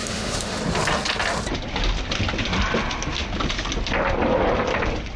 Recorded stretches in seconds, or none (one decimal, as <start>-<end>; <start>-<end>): 0.6-5.2